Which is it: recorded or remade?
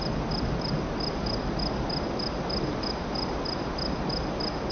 recorded